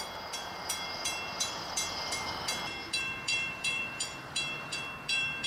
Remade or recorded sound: remade